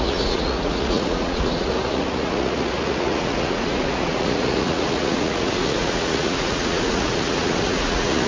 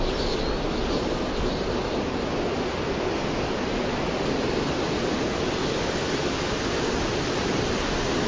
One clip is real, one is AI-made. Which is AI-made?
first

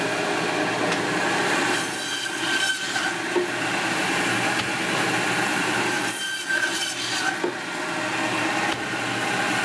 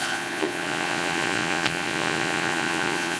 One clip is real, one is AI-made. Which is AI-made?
second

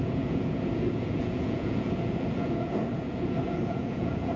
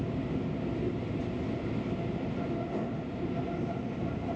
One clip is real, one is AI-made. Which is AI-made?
first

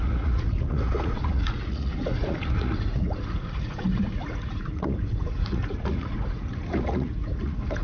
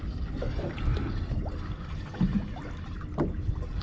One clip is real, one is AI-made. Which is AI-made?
first